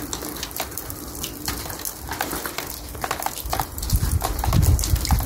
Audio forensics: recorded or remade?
recorded